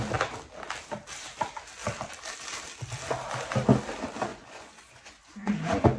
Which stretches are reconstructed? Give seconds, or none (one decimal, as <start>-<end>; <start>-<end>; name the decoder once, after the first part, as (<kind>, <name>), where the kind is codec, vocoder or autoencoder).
4.3-5.5 (vocoder, Vocos)

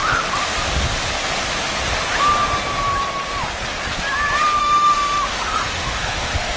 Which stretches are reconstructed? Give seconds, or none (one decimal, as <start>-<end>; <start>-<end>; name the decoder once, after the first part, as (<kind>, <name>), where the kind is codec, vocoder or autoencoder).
4.6-6.6 (autoencoder, DAC-VAE)

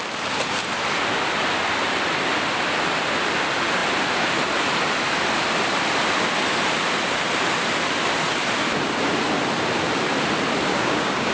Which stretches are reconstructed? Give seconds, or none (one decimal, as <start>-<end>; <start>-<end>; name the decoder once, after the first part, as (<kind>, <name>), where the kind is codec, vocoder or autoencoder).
10.7-11.3 (codec, DAC)

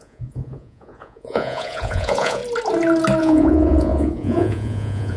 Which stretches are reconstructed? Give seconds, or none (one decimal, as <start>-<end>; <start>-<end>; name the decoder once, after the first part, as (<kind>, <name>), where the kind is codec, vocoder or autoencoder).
0.0-2.4 (vocoder, Vocos); 3.2-5.2

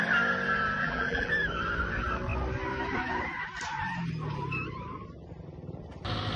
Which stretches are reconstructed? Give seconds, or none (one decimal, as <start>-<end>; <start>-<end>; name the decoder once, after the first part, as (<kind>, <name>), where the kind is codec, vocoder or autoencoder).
0.8-1.3 (vocoder, BigVGAN v2)

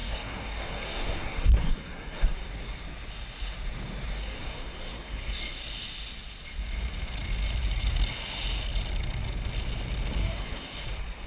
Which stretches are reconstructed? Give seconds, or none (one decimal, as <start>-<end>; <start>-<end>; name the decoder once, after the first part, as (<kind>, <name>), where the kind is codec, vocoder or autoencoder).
0.0-2.5 (codec, SNAC); 4.2-5.4; 10.2-10.9